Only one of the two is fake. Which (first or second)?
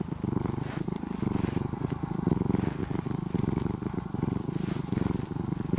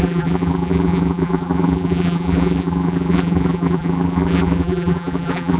second